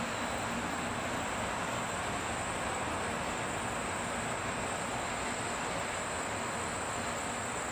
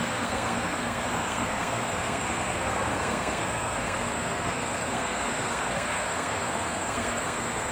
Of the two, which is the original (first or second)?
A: first